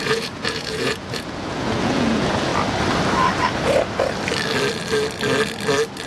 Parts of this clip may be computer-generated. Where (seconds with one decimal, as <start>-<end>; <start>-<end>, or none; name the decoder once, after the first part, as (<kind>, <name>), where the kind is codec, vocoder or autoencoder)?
0.0-2.5 (vocoder, Vocos)